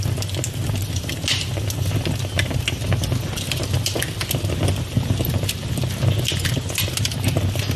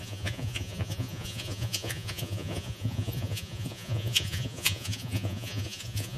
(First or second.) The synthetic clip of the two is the second